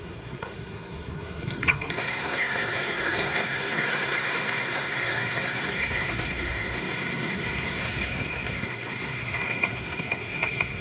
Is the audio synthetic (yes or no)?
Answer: yes